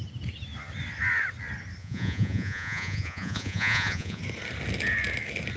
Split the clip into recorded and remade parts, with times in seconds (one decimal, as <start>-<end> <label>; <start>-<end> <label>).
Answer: 0.0-1.8 recorded; 1.8-4.2 remade; 4.2-5.6 recorded